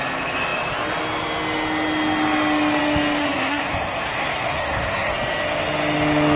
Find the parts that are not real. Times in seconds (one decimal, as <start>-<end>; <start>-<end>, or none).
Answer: 3.2-5.1